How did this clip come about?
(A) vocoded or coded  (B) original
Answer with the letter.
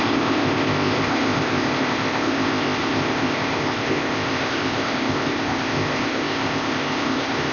A